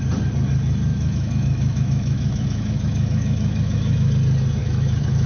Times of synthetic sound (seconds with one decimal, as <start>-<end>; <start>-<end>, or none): 0.9-4.1; 4.6-5.3